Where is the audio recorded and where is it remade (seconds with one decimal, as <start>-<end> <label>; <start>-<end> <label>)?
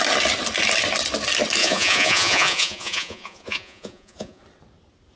0.0-1.6 recorded; 1.6-4.4 remade; 4.4-5.2 recorded